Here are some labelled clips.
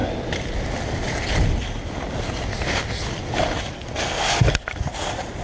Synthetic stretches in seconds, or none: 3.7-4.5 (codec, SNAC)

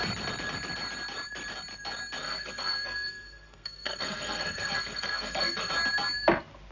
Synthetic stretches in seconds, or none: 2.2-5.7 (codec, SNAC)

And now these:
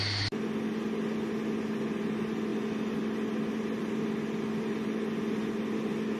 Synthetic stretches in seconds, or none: none

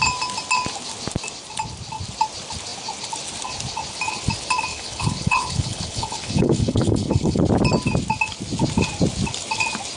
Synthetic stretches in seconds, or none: 4.7-7.4 (codec, HILCodec)

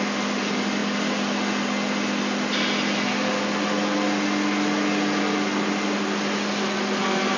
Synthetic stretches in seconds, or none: none